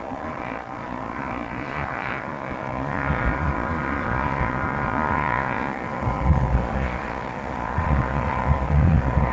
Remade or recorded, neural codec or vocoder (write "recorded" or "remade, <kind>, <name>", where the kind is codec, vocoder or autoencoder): remade, vocoder, Vocos